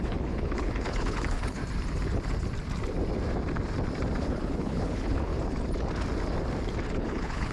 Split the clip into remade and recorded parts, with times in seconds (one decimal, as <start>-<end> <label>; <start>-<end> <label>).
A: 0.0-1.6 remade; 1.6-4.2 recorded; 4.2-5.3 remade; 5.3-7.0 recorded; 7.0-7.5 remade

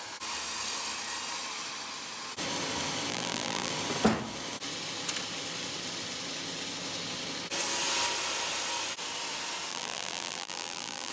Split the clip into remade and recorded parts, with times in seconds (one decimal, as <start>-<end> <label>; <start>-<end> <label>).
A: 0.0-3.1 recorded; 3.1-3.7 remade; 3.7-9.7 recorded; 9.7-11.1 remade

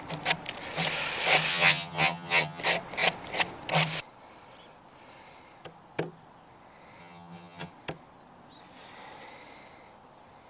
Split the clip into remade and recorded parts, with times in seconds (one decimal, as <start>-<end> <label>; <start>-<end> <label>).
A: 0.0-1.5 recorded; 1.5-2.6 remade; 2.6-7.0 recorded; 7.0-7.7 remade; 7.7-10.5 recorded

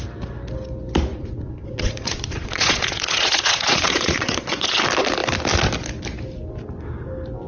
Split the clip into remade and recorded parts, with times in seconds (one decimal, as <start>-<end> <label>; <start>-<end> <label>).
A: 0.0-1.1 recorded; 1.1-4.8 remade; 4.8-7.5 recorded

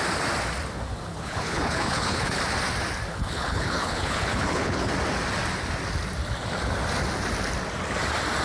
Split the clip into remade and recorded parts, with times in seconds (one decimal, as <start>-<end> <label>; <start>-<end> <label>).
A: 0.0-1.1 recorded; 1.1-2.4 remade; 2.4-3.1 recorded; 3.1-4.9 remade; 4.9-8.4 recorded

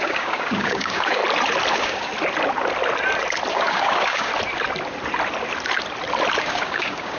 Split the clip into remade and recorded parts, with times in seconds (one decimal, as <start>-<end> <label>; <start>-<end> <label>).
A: 0.0-1.2 remade; 1.2-1.7 recorded; 1.7-2.1 remade; 2.1-3.5 recorded; 3.5-4.3 remade; 4.3-6.4 recorded; 6.4-7.2 remade